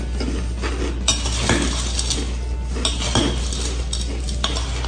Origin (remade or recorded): recorded